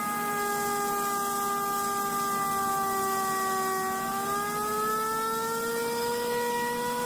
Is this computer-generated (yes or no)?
no